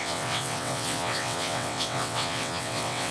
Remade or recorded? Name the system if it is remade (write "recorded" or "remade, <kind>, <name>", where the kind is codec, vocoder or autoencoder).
remade, vocoder, WaveNeXt